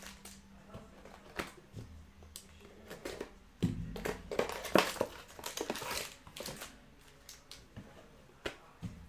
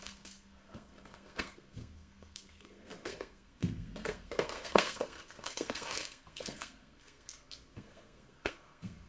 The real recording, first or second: first